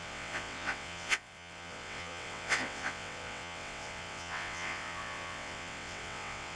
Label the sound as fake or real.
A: fake